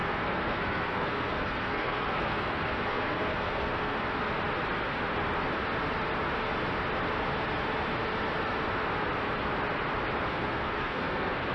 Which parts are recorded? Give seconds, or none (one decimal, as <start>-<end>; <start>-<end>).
4.2-10.3